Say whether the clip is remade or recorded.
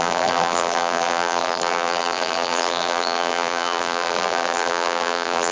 remade